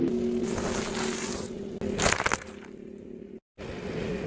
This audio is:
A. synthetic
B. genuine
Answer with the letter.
B